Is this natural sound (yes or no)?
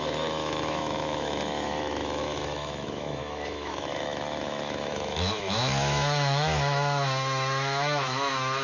no